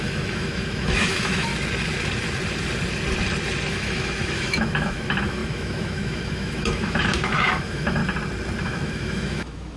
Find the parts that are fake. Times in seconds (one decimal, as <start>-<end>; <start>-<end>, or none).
0.0-1.5; 3.7-8.0; 8.6-9.8